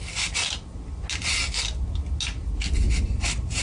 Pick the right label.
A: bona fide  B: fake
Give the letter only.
A